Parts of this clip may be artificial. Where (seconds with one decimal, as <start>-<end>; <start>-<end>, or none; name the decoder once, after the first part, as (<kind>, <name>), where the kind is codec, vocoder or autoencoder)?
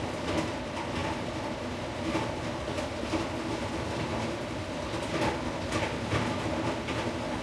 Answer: none